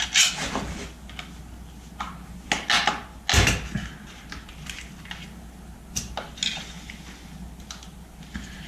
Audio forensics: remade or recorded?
recorded